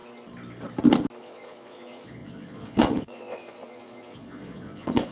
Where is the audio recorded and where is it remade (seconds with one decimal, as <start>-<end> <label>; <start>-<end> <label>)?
0.0-1.2 recorded; 1.2-5.1 remade